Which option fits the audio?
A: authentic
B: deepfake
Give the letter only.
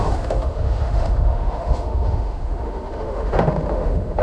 B